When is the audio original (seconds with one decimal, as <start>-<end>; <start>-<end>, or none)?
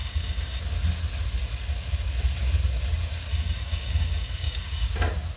0.6-3.3; 4.9-5.4